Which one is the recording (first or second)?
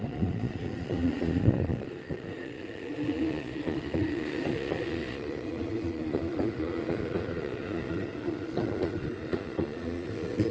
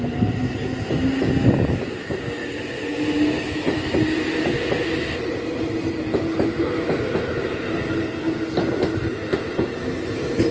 second